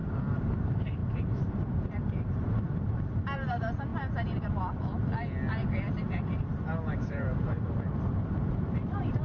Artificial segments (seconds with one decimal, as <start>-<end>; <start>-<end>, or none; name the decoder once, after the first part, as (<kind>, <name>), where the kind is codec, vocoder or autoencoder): 0.0-3.9 (vocoder, BigVGAN v2); 5.9-9.2